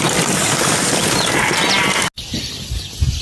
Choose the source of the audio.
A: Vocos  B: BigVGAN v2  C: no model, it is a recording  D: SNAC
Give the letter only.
C